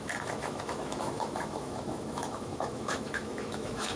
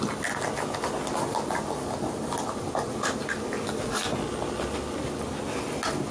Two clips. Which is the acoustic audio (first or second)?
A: second